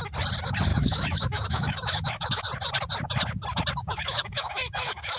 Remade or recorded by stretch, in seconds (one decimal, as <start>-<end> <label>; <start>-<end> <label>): 0.0-0.7 recorded; 0.7-2.4 remade; 2.4-3.8 recorded; 3.8-5.2 remade